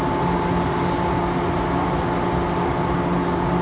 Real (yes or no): yes